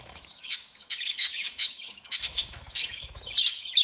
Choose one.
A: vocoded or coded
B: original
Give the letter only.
A